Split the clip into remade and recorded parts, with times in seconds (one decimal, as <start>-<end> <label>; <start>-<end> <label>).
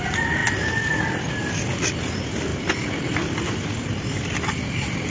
0.0-5.1 recorded